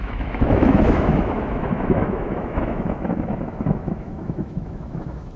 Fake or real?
fake